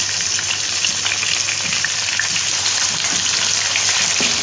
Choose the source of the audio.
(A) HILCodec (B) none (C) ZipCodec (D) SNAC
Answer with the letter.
B